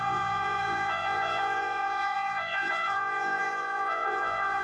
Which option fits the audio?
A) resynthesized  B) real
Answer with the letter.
A